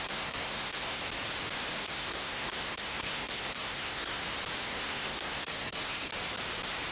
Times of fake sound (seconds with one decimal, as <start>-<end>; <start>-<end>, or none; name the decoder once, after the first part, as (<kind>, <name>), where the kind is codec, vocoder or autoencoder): 0.0-1.0 (codec, SNAC); 1.8-4.2; 4.7-6.1